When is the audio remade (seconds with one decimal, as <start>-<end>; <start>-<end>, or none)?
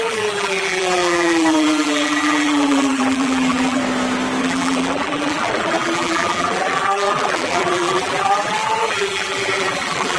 0.0-3.8; 4.4-10.2